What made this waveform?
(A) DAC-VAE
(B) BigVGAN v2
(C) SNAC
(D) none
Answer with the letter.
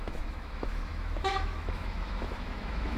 A